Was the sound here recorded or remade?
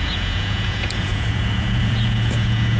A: remade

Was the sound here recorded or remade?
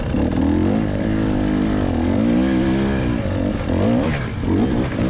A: recorded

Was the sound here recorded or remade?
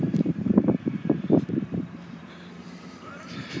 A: remade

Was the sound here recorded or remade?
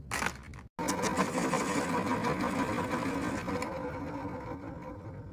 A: recorded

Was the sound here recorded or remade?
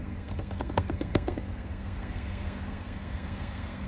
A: remade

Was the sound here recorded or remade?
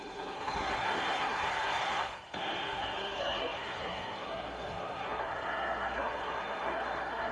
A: remade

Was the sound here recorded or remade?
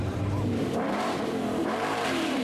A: remade